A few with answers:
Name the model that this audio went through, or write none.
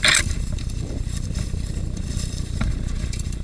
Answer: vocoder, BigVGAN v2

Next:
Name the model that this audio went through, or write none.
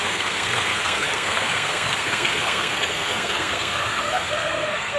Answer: codec, SNAC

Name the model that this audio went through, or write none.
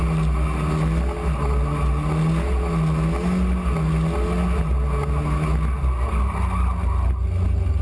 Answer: none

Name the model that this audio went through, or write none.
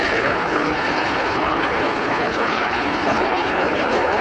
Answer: codec, HILCodec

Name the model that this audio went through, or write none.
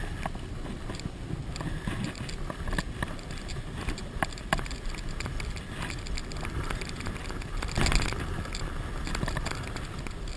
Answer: none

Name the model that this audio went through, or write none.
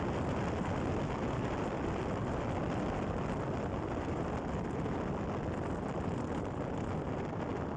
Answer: none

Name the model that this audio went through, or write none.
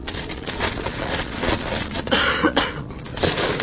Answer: vocoder, Vocos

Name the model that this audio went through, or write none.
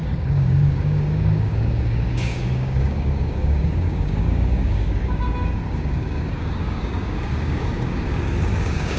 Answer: codec, DAC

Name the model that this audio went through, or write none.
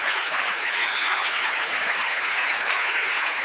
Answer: codec, HILCodec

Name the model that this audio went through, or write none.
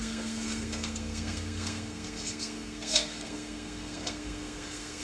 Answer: codec, SNAC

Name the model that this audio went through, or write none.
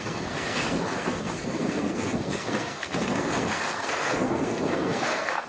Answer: codec, SNAC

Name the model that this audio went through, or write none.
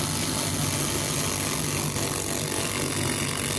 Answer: none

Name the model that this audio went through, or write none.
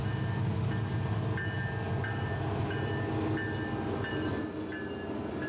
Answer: none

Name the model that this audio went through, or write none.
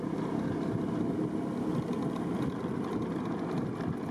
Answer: none